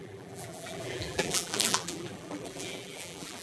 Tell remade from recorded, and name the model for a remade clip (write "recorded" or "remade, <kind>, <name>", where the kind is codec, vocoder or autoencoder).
remade, vocoder, BigVGAN v2